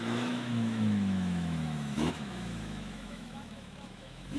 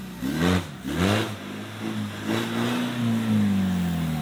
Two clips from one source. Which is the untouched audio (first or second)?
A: second